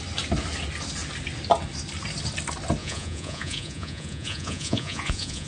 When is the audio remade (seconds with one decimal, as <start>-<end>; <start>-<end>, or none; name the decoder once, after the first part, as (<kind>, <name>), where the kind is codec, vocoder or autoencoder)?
2.8-5.5 (vocoder, Vocos)